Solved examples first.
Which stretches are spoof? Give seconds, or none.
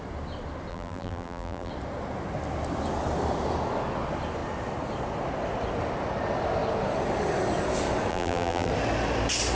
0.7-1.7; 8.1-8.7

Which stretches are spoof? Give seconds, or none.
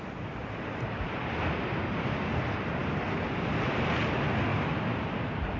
0.4-0.9; 4.5-5.6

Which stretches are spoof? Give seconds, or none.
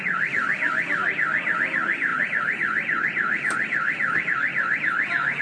0.0-1.0; 1.6-5.4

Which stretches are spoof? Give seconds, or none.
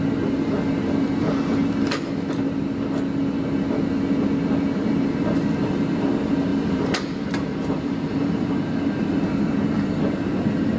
6.5-8.5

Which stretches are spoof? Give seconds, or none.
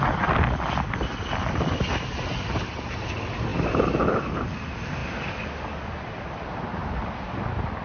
none